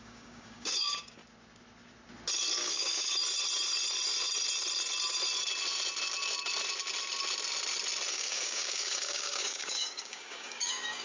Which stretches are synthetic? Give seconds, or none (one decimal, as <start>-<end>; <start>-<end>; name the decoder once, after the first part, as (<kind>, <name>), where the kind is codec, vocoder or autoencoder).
0.0-1.2 (codec, DAC); 2.6-3.2; 8.1-11.0